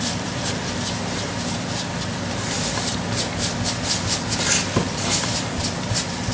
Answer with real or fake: fake